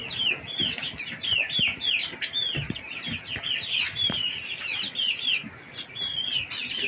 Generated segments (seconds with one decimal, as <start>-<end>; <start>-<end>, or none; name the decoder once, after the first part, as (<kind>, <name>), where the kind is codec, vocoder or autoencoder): none